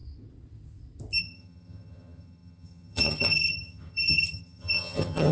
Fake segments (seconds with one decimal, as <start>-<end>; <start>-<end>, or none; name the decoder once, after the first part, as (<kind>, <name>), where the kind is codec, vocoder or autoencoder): 1.2-5.3 (vocoder, HiFi-GAN)